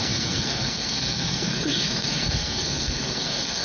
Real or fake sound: fake